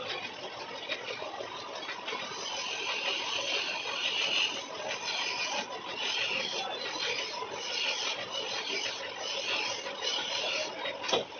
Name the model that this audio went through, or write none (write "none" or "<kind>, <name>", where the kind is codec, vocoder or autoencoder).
none